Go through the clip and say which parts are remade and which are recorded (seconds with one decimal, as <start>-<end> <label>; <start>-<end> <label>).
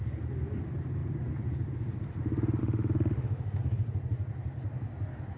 0.0-2.6 recorded; 2.6-3.6 remade; 3.6-5.4 recorded